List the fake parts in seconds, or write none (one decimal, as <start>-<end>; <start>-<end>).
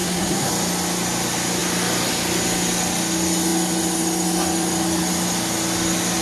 0.0-0.5